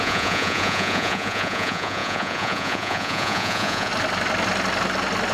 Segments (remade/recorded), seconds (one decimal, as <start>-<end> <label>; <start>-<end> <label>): 0.0-3.9 remade; 3.9-5.3 recorded